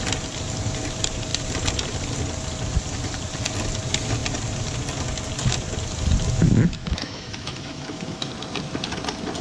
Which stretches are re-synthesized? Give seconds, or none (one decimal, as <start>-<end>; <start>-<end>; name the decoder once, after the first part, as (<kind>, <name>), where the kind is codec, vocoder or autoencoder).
6.4-8.3 (autoencoder, DAC-VAE)